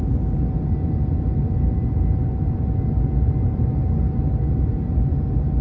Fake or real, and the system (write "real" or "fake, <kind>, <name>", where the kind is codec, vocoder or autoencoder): real